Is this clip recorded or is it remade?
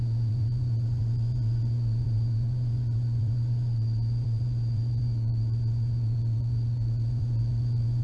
remade